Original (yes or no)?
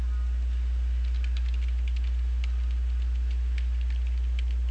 yes